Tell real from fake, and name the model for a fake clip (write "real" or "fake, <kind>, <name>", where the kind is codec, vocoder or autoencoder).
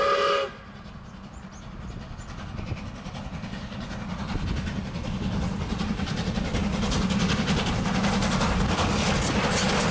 real